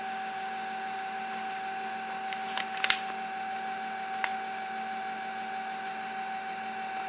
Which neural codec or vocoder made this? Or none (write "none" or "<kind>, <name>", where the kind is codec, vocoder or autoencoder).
none